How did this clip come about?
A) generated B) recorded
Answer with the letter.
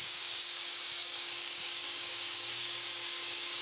A